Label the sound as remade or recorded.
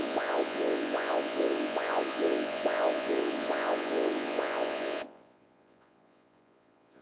remade